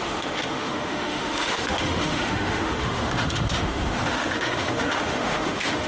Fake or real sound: fake